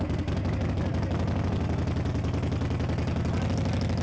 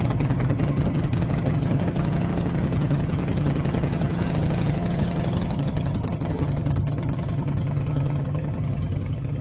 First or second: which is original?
first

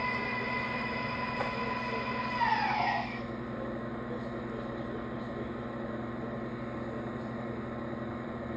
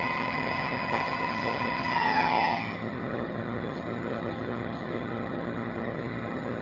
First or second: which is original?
first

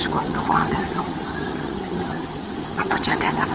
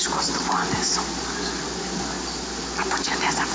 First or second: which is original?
second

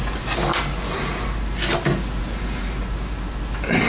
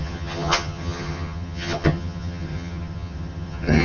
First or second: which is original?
first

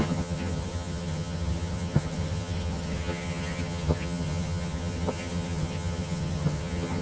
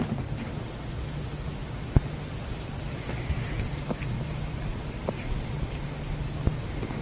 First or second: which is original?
second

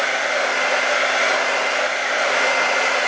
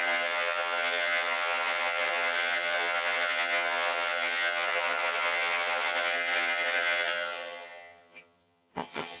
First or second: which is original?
first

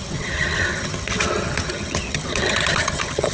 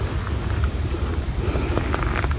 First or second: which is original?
second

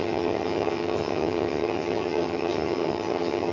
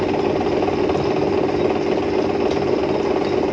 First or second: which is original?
second